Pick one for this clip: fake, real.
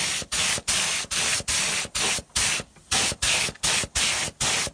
real